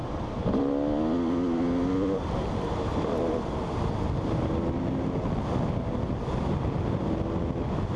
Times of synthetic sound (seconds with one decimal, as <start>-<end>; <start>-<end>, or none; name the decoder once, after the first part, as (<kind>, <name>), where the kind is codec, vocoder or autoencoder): none